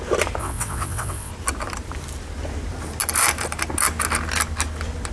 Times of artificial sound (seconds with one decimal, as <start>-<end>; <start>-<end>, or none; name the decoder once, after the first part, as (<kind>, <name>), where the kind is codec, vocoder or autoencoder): 0.4-1.3 (vocoder, WaveNeXt)